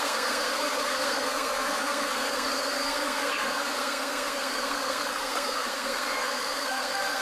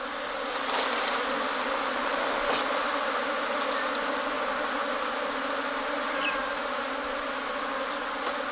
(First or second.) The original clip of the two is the second